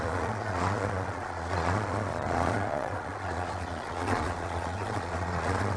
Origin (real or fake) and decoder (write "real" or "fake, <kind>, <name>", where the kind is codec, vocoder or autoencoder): fake, vocoder, Vocos